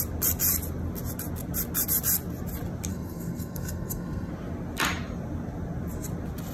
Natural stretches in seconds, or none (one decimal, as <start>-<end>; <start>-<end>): 0.0-2.9; 4.3-6.5